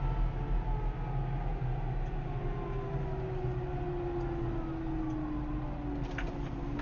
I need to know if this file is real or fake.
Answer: real